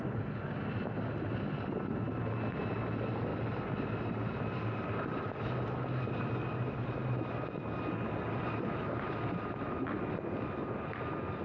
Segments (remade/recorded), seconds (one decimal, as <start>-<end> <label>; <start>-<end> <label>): 0.0-11.4 recorded